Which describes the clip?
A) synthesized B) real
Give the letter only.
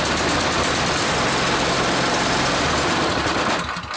B